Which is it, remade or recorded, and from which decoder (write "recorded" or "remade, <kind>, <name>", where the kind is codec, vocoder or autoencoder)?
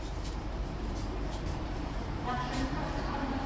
remade, vocoder, BigVGAN v2